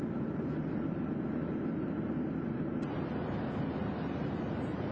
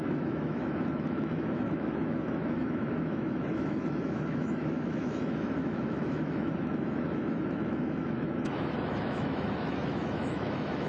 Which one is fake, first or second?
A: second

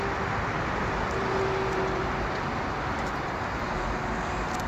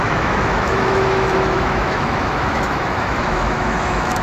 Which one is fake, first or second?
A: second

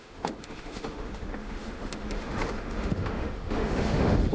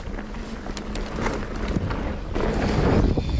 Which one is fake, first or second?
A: first